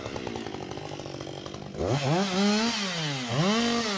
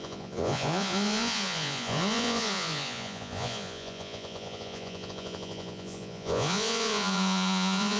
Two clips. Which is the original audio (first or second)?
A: first